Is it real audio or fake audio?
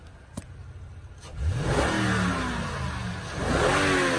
real